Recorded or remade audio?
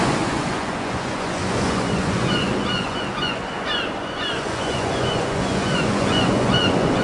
remade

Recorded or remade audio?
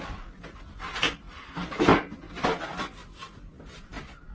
recorded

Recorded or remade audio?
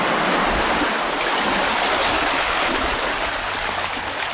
recorded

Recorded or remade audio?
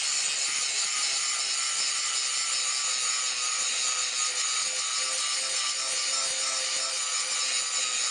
recorded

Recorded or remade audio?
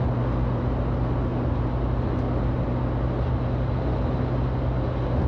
recorded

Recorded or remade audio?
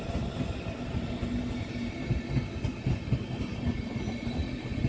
recorded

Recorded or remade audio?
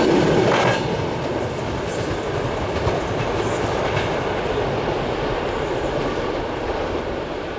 recorded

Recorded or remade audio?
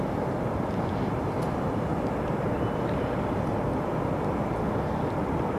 recorded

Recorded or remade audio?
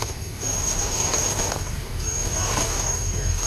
remade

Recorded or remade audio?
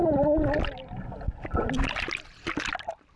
recorded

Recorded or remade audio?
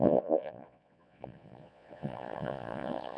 remade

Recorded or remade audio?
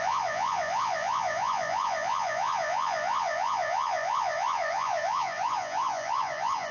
remade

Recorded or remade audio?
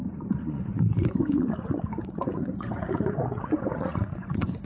remade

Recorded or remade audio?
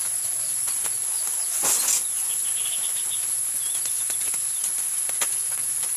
recorded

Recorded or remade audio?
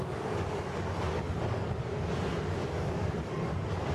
remade